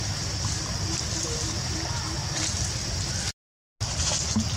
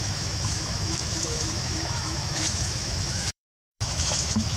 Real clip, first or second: first